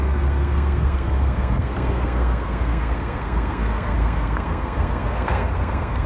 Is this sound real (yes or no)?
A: no